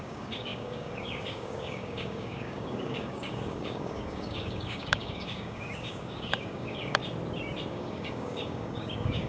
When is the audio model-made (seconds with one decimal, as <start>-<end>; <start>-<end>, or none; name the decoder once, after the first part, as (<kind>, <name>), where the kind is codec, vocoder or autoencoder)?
0.0-7.0 (codec, DAC); 7.7-9.3